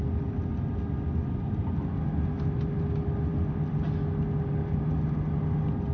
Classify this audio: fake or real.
real